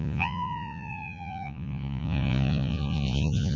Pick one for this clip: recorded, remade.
remade